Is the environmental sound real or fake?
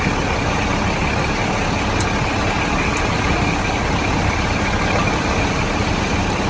real